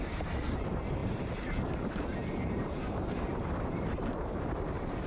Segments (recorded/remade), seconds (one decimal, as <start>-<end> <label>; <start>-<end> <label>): 0.0-5.1 remade